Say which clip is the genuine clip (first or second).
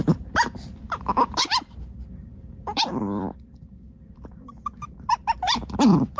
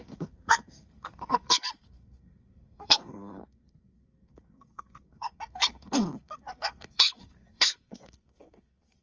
first